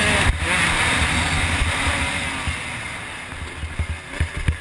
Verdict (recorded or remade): recorded